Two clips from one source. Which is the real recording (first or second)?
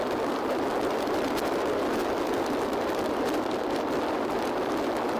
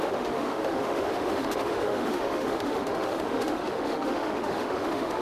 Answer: first